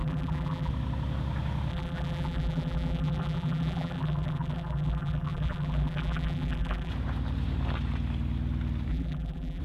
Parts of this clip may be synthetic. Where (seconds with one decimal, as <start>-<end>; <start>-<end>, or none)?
0.0-0.7; 1.7-6.9; 8.9-9.6